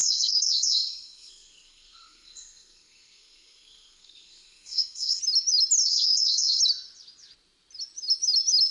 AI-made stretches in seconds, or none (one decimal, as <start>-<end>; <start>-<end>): 0.0-5.2; 5.8-6.6